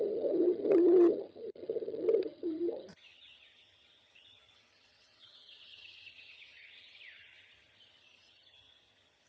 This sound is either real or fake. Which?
fake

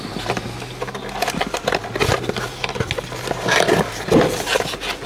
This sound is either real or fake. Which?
real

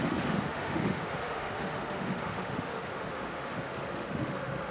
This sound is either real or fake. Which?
fake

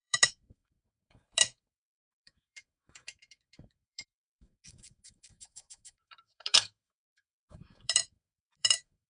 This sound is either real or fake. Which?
fake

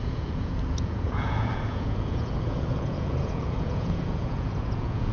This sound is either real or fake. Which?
fake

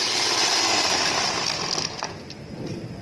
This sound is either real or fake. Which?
real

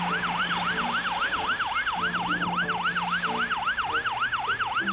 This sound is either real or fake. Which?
real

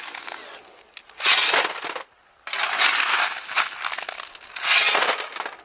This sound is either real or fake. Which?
real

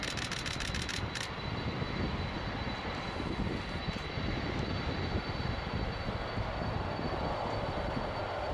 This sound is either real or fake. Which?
real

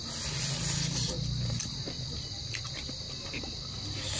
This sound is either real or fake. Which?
real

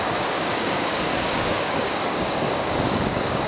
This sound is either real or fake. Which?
fake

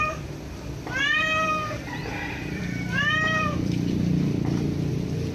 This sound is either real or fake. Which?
fake